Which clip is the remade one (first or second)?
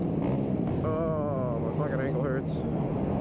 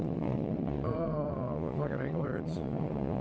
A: second